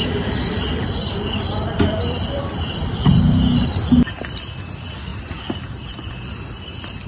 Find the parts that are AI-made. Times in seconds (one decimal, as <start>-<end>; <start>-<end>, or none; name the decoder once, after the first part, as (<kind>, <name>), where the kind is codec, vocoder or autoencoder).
0.0-4.1 (vocoder, BigVGAN v2); 5.1-6.1